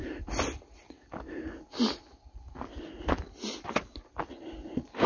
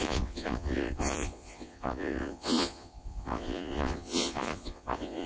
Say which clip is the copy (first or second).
second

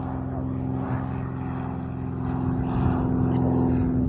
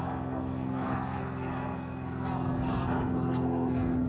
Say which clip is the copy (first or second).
second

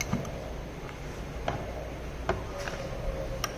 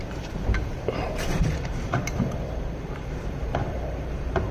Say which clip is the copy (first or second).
second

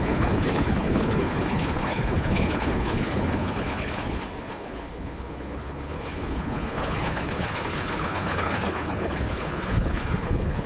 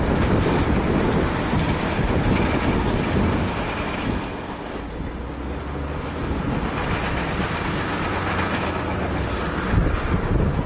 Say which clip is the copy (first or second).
first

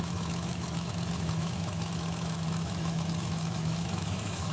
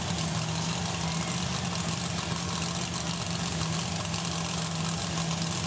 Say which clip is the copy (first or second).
first